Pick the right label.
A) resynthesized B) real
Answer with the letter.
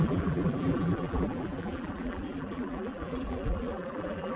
A